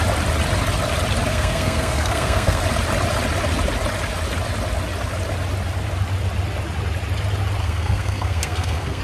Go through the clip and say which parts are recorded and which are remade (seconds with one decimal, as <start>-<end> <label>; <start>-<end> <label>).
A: 0.0-1.3 recorded; 1.3-2.6 remade; 2.6-7.6 recorded; 7.6-9.0 remade